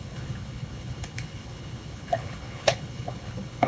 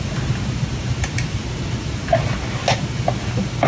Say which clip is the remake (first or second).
first